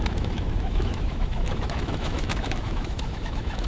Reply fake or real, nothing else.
fake